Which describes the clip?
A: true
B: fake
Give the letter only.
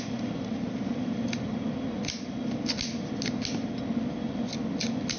A